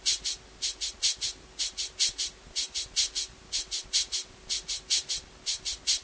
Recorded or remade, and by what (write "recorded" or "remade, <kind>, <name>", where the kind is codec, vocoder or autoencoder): recorded